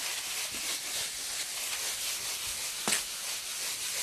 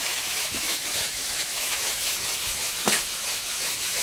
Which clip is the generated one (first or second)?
second